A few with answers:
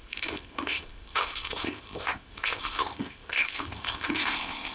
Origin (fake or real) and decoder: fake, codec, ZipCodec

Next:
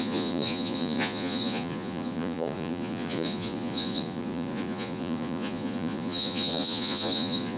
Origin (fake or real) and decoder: fake, vocoder, Vocos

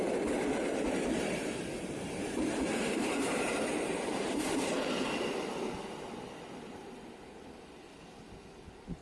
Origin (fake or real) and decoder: fake, vocoder, BigVGAN v2